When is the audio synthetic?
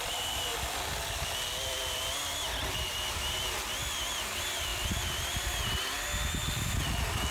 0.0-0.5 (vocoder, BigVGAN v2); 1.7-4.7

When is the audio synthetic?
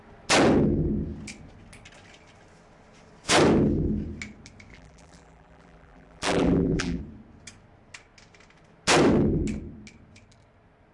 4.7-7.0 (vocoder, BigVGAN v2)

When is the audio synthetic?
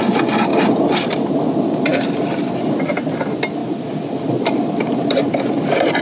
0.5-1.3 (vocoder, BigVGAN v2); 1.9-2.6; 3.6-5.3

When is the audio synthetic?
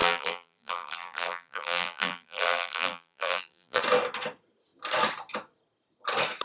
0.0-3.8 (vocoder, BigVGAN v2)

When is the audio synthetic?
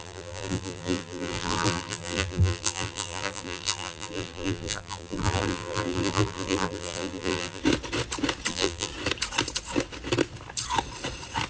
0.0-7.6 (vocoder, BigVGAN v2); 8.5-8.9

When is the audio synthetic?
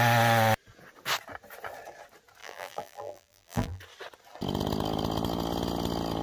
2.4-3.8 (vocoder, BigVGAN v2)